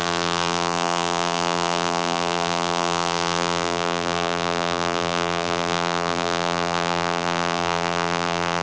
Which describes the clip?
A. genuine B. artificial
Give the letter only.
B